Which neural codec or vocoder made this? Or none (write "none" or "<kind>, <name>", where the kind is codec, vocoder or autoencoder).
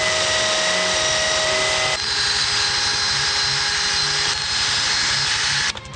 none